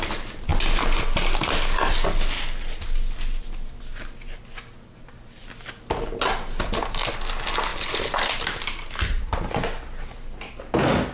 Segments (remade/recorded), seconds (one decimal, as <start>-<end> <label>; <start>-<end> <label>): 0.0-11.1 recorded